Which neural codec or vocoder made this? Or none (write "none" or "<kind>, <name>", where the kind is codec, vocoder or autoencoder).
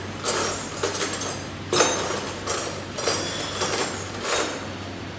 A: none